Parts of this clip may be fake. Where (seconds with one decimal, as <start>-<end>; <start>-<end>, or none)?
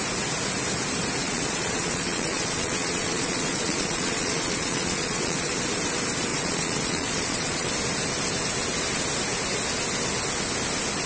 1.2-5.5; 6.3-7.7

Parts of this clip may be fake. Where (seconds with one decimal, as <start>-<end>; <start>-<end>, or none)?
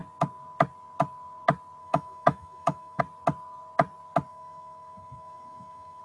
1.8-3.0; 4.3-6.0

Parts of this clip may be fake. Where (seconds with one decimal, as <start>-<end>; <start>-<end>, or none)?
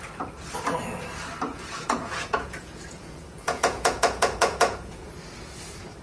1.5-5.1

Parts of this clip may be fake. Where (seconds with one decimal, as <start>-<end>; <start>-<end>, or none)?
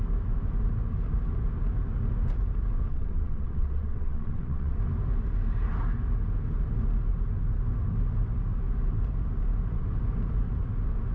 2.9-4.8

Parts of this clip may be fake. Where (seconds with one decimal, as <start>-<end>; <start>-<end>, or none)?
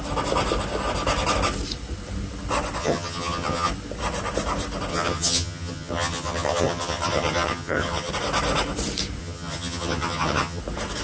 2.8-3.7; 4.9-8.1; 9.2-10.6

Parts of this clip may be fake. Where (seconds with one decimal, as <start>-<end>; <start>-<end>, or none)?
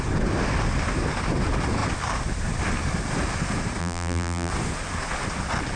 3.8-4.5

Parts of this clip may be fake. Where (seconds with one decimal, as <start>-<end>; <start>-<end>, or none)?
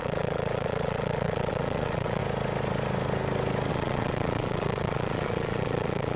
0.0-2.2; 3.7-6.2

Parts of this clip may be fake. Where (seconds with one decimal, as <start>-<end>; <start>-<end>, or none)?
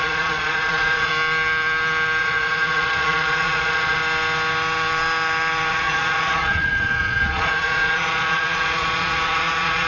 0.0-1.1; 2.2-4.0; 5.7-9.9